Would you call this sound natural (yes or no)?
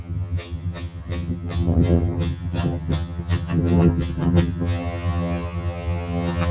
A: no